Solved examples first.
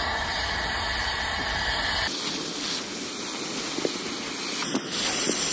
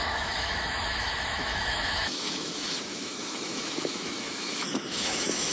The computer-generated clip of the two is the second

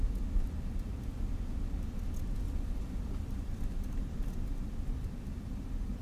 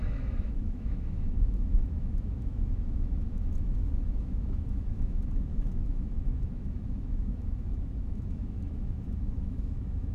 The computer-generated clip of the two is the second